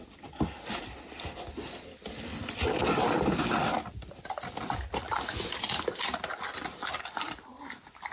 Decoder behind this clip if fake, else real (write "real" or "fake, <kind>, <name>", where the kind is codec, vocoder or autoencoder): real